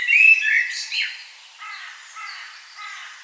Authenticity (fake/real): real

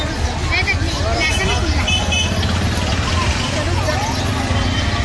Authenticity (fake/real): real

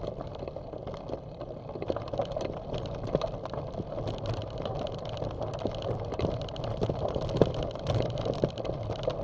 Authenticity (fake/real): real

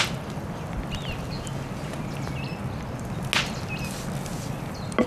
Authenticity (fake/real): real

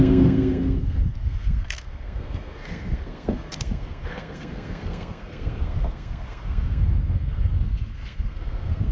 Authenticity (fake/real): fake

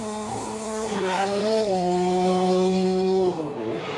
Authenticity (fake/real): fake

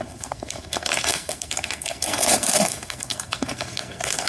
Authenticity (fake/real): fake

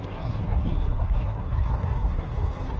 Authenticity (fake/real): fake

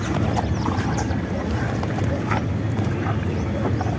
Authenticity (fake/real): real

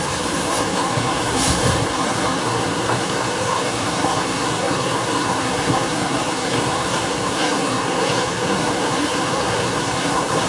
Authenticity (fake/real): fake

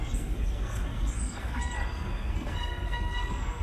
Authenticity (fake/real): fake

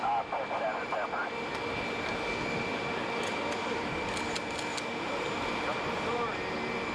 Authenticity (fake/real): real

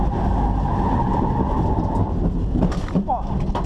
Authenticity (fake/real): real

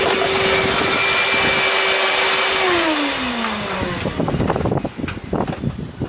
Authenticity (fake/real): real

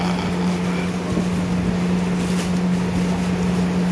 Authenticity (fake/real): real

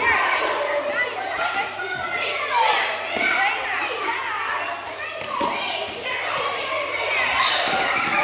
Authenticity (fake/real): real